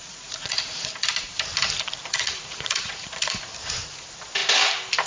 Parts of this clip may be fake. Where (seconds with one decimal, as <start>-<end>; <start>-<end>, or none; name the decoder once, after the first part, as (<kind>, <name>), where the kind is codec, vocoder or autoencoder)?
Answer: 0.0-0.9 (vocoder, Vocos); 2.1-3.4